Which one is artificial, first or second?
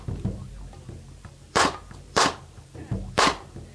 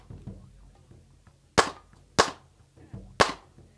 first